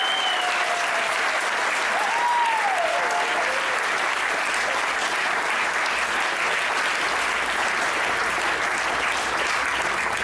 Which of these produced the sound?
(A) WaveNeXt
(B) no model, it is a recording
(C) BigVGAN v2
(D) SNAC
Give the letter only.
B